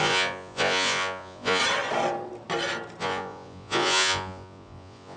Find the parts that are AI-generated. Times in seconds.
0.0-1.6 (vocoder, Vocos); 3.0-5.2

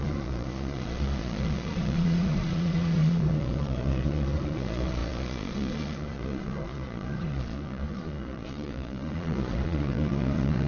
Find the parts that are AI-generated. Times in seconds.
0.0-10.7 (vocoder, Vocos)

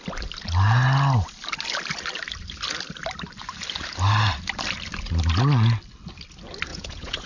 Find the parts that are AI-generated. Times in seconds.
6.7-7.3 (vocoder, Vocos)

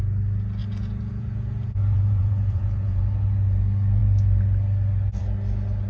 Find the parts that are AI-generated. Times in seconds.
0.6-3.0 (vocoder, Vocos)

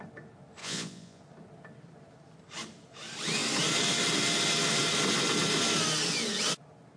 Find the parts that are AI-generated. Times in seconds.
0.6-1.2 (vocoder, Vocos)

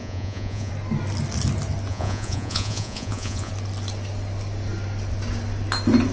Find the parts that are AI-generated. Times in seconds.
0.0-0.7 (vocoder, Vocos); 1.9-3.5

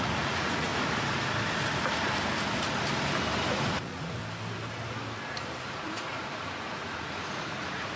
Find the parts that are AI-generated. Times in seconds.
0.0-0.7 (vocoder, Vocos); 3.5-4.2; 5.6-8.0

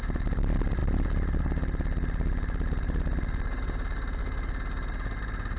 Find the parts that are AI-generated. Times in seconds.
none